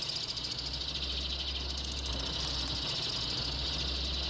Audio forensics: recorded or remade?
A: recorded